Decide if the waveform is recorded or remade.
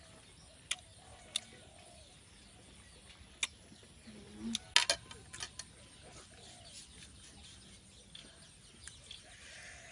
recorded